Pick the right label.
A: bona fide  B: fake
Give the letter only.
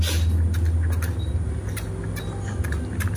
A